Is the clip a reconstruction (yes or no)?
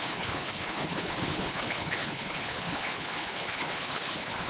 yes